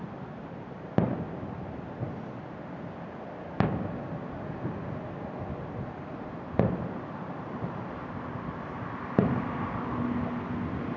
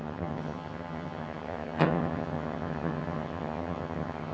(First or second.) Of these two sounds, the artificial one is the second